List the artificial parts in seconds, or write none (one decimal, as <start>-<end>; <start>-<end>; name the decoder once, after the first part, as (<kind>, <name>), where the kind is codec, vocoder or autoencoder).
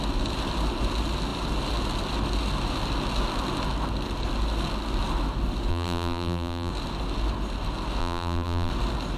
5.7-6.7 (vocoder, BigVGAN v2); 8.0-8.7